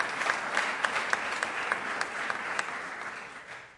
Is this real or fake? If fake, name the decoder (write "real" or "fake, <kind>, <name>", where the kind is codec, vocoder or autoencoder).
real